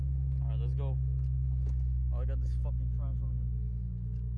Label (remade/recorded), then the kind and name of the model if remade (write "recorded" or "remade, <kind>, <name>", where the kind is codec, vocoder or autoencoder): recorded